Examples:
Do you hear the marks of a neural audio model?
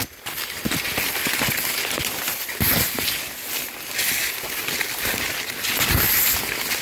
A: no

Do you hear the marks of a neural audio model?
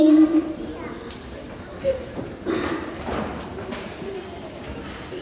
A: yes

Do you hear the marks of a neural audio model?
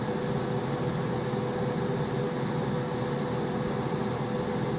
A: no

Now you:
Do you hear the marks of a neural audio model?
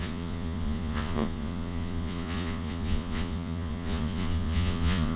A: yes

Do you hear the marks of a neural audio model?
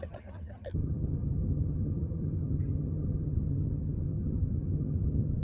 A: yes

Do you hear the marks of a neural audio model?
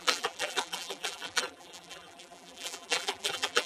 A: yes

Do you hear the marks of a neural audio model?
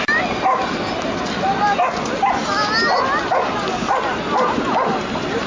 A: no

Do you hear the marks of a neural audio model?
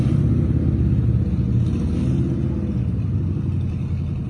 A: no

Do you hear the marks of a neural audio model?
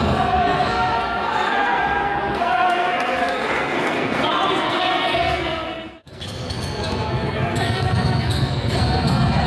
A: yes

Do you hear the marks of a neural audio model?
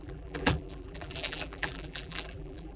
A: yes